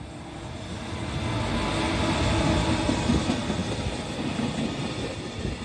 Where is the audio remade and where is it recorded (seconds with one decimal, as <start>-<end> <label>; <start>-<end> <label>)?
0.0-5.6 recorded